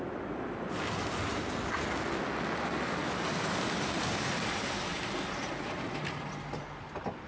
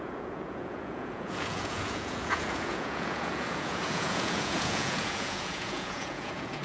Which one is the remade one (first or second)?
second